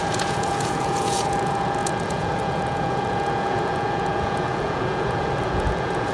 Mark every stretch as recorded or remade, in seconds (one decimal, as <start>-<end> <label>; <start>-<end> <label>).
0.0-6.1 remade